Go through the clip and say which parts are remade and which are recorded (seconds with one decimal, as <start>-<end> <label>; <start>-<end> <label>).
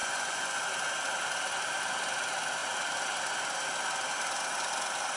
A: 0.0-0.6 remade; 0.6-5.2 recorded